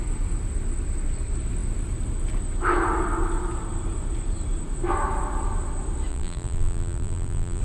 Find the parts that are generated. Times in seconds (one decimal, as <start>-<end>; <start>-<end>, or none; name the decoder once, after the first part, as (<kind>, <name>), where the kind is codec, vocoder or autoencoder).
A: 6.1-7.6 (vocoder, BigVGAN v2)